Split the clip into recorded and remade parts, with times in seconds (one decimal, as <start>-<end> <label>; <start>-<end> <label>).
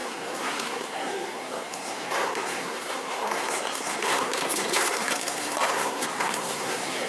0.0-7.1 remade